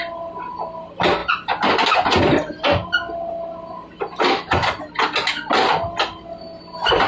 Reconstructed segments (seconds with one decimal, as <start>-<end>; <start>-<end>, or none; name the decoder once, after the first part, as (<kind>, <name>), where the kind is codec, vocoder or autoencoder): none